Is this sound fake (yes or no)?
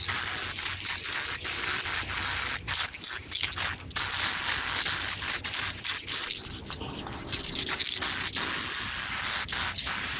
no